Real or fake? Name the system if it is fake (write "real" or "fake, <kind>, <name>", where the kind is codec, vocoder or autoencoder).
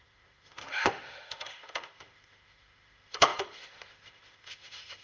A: fake, autoencoder, DAC-VAE